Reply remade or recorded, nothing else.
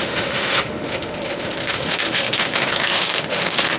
remade